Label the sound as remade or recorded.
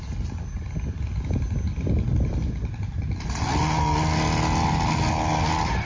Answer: recorded